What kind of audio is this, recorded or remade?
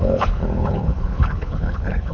remade